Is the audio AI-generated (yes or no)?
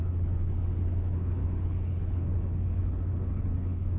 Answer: yes